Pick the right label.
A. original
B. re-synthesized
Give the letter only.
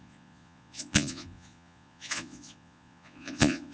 B